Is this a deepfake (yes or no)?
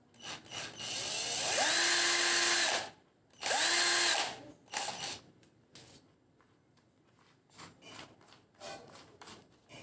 no